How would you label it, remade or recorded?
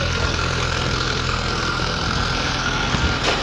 remade